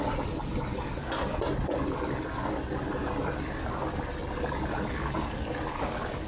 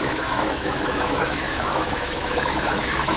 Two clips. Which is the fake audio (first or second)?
second